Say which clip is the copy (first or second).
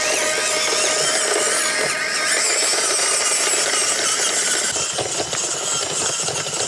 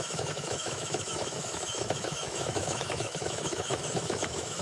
second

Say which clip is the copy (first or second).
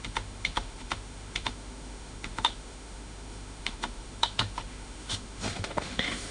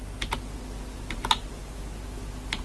first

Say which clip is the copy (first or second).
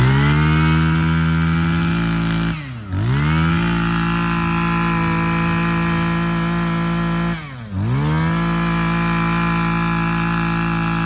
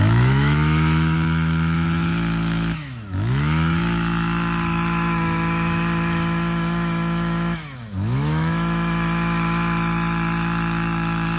second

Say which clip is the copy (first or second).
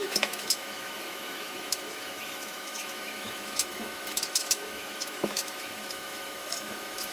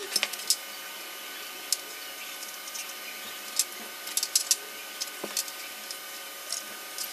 first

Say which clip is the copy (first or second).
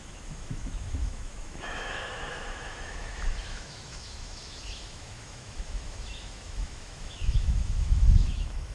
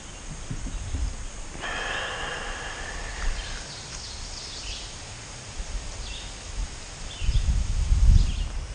first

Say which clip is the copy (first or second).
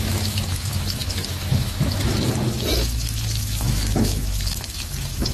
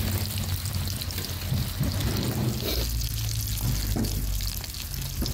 first